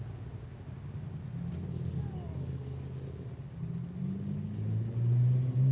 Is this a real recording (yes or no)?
yes